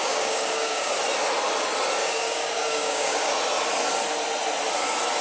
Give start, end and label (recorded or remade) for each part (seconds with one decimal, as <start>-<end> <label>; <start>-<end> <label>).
0.0-0.9 remade; 0.9-2.0 recorded; 2.0-3.3 remade; 3.3-5.2 recorded